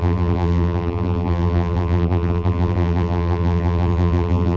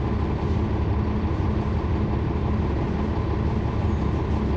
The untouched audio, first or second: second